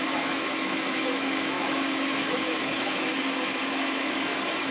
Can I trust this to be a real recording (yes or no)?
no